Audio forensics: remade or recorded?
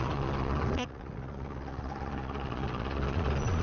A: remade